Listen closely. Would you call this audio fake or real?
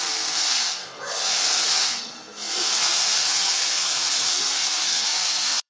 fake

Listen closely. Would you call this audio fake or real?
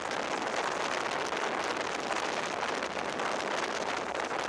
real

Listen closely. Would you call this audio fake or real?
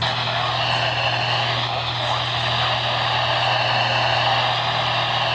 real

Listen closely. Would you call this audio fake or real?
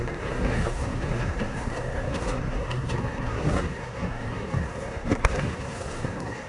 fake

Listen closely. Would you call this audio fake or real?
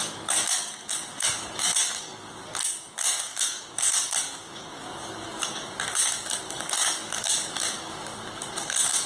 fake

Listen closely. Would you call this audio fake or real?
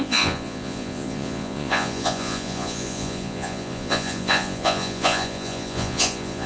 fake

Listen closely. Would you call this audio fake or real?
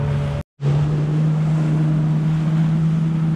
real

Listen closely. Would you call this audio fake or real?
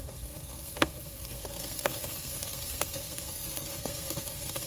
fake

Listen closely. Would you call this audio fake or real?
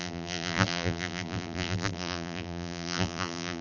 fake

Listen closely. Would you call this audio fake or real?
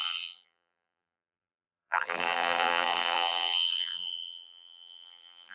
fake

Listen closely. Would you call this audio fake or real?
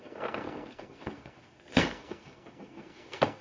fake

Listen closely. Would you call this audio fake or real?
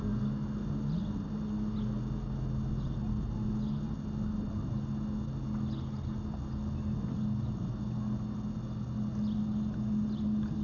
real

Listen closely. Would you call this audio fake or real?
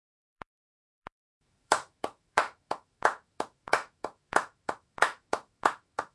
fake